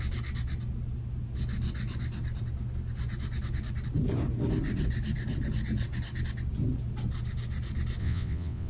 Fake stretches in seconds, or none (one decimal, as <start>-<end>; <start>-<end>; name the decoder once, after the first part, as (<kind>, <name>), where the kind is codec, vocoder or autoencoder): 8.0-8.7 (vocoder, WaveNeXt)